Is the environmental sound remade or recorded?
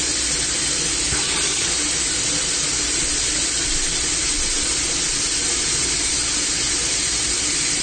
recorded